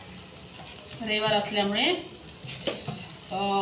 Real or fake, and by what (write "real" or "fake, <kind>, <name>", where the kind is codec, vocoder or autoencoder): real